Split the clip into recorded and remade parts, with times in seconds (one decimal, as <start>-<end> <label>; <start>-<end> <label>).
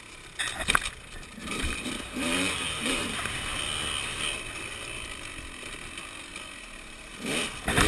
0.0-1.4 recorded; 1.4-3.6 remade; 3.6-6.3 recorded; 6.3-7.1 remade; 7.1-7.9 recorded